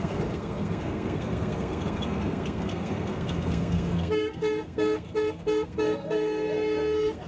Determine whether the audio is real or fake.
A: fake